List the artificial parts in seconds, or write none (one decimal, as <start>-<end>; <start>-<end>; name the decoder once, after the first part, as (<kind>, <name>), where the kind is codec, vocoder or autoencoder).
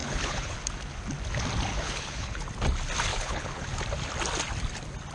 0.0-0.6 (codec, HILCodec); 1.7-2.4; 3.1-3.7